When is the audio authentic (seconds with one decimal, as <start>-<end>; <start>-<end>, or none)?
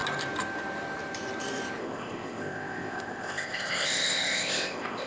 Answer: 0.0-1.8